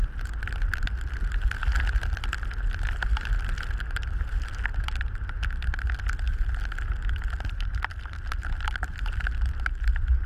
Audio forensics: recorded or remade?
recorded